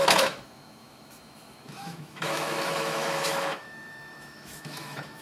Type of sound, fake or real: fake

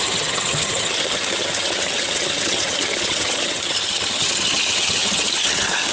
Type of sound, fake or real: fake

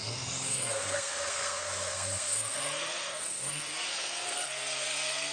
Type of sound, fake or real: fake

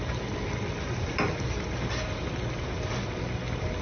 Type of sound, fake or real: real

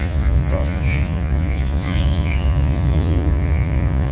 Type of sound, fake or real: fake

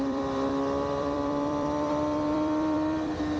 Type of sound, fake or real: fake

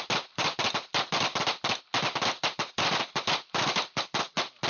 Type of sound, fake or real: real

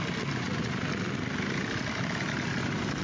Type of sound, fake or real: real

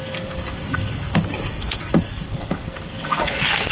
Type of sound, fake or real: fake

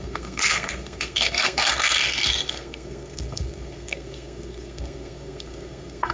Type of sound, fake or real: fake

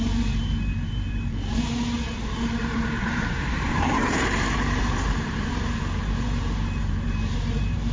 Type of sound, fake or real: fake